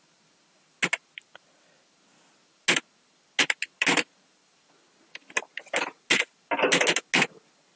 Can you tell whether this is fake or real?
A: real